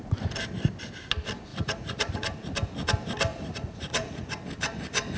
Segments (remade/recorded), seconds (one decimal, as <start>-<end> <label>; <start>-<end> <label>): 0.0-1.5 recorded; 1.5-2.1 remade; 2.1-3.3 recorded; 3.3-4.4 remade; 4.4-5.2 recorded